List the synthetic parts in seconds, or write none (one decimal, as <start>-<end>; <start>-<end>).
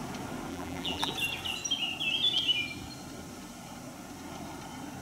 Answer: 0.5-1.1